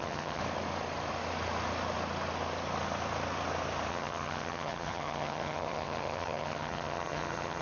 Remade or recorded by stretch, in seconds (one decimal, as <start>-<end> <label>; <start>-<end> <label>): 0.0-0.4 remade; 0.4-3.9 recorded; 3.9-7.6 remade